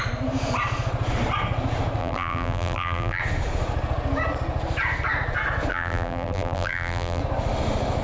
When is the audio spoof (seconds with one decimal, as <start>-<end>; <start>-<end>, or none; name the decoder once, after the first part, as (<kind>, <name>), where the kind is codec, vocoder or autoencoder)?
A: 2.0-3.2 (vocoder, BigVGAN v2); 5.7-7.2